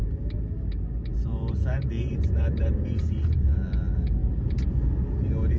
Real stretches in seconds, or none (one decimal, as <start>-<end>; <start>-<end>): 0.0-1.1; 3.5-4.2; 4.7-5.6